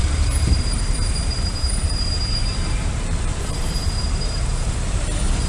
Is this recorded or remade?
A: remade